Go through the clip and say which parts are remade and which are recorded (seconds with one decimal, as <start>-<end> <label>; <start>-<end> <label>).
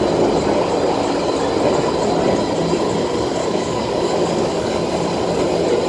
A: 0.0-3.4 recorded; 3.4-4.8 remade; 4.8-5.9 recorded